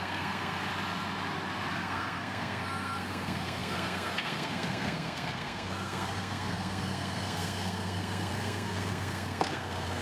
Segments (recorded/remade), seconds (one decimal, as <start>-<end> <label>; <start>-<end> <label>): 0.0-0.7 remade; 0.7-1.7 recorded; 1.7-10.0 remade